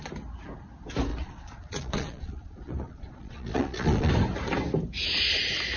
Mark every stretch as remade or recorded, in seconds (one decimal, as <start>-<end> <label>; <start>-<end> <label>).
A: 0.0-1.1 recorded; 1.1-4.1 remade; 4.1-5.8 recorded